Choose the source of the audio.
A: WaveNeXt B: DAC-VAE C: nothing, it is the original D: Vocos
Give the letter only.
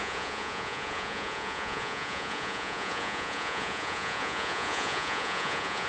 D